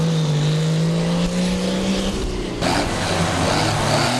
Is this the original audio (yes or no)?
yes